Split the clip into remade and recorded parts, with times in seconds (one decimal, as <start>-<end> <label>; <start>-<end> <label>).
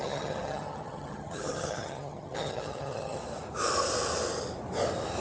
0.0-3.2 remade; 3.2-5.2 recorded